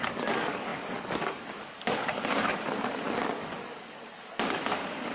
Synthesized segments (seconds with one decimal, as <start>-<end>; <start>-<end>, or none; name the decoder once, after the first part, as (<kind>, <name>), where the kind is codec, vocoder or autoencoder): 0.0-5.1 (codec, DAC)